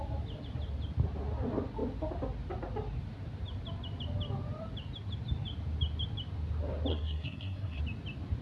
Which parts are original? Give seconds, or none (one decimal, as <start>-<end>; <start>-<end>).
0.0-6.9; 7.8-8.4